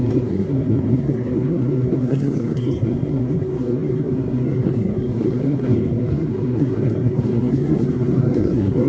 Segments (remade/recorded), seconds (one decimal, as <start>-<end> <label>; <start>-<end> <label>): 0.0-8.9 remade